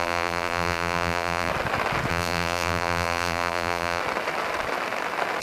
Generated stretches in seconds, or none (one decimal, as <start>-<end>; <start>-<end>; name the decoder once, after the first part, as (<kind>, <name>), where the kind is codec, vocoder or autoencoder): 0.0-1.5 (vocoder, BigVGAN v2); 2.1-4.0